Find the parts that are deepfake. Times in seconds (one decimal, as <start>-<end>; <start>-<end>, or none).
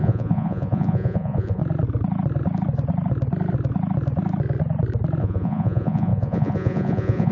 0.0-1.6; 5.2-7.3